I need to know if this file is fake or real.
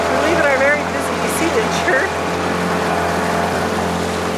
real